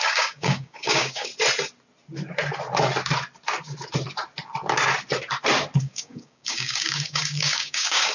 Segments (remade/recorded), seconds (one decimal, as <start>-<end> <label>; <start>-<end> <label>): 0.0-1.3 remade; 1.3-5.8 recorded; 5.8-8.1 remade